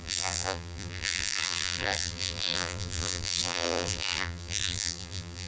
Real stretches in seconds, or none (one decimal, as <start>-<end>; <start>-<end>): none